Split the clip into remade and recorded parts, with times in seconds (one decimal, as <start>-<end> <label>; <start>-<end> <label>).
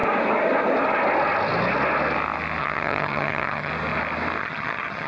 0.0-2.6 recorded; 2.6-3.7 remade; 3.7-4.4 recorded; 4.4-5.1 remade